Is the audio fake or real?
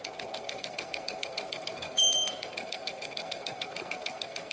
fake